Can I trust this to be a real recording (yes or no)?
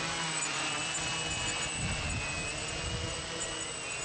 yes